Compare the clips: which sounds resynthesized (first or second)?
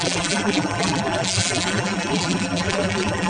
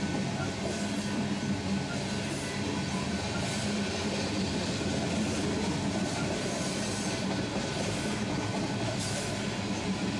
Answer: first